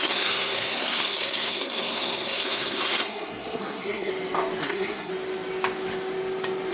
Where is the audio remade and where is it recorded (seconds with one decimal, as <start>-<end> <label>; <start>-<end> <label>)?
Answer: 0.0-4.1 remade; 4.1-4.6 recorded; 4.6-5.1 remade; 5.1-6.7 recorded